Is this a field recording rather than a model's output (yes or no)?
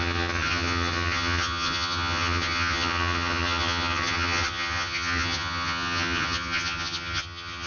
no